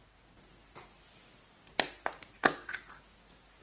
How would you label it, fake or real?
real